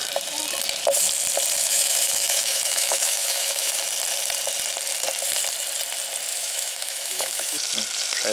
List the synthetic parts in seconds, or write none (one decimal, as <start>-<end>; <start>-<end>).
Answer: 1.6-3.7; 6.3-7.6